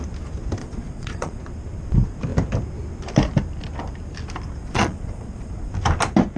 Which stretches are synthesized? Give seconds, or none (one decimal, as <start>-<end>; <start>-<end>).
0.6-1.4; 4.6-5.7